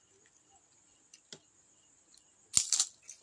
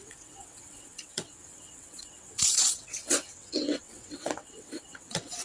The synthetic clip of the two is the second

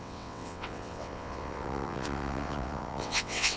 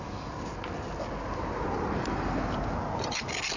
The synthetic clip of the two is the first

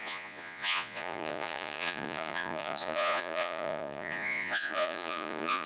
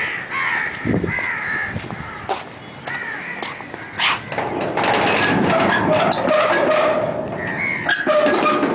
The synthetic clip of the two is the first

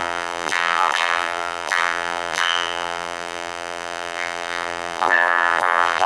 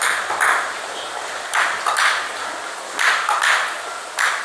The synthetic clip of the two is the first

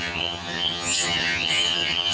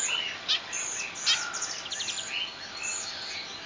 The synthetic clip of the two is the first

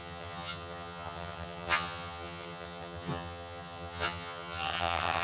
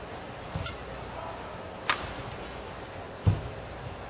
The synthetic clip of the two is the first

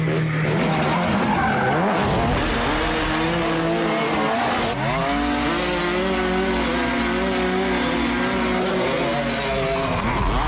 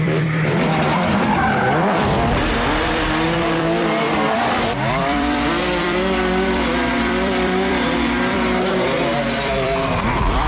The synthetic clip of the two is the second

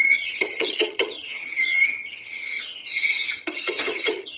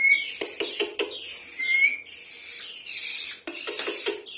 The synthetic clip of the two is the first